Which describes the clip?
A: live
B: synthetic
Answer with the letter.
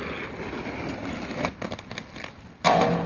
A